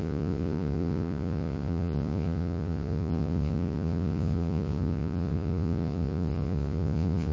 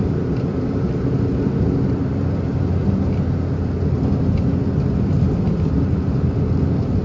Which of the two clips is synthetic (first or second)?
first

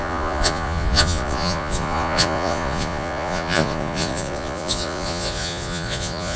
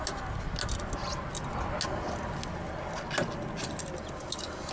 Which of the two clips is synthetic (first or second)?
first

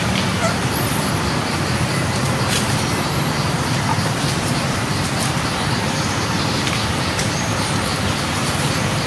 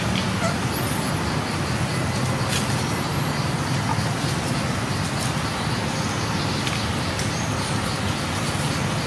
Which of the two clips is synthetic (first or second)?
first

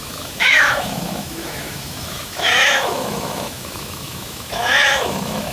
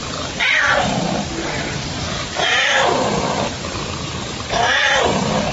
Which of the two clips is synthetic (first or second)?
first